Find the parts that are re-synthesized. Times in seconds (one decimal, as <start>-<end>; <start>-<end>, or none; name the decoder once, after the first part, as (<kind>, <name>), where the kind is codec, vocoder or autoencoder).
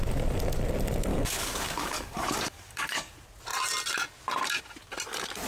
1.1-3.1 (codec, DAC)